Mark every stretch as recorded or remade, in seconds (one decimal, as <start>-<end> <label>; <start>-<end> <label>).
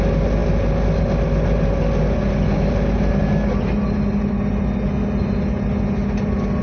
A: 0.0-6.6 recorded